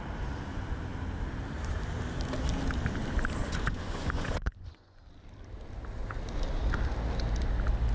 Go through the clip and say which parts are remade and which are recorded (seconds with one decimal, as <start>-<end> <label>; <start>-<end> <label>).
0.0-3.4 recorded; 3.4-5.0 remade; 5.0-7.9 recorded